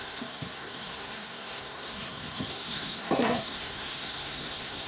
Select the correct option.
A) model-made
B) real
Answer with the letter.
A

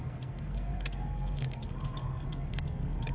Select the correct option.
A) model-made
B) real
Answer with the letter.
A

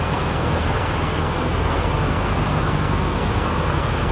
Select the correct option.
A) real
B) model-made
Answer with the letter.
B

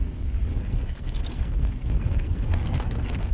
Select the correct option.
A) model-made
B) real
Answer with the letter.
A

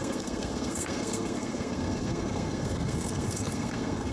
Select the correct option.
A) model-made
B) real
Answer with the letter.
A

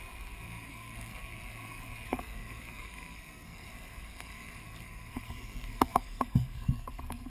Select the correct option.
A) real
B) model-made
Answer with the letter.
B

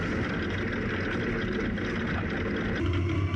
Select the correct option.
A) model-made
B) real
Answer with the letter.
B